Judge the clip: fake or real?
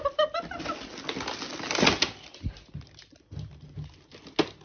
real